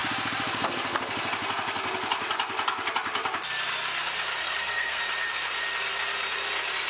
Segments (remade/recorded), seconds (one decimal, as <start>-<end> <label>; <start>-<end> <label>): 0.0-4.4 recorded; 4.4-5.0 remade; 5.0-6.9 recorded